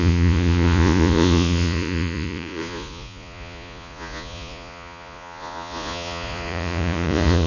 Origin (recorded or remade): remade